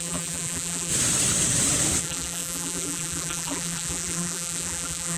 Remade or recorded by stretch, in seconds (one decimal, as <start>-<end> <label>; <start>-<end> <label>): 0.0-0.9 remade; 0.9-2.0 recorded; 2.0-5.2 remade